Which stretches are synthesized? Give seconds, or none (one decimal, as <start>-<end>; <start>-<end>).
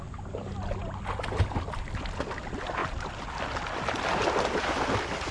none